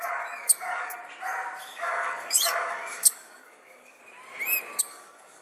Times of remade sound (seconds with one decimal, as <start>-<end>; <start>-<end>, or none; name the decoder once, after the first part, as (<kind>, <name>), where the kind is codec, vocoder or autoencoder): 0.0-1.0 (codec, DAC); 1.6-4.0; 4.8-5.4